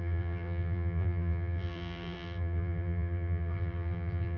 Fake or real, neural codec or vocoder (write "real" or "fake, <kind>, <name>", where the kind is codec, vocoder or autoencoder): fake, vocoder, BigVGAN v2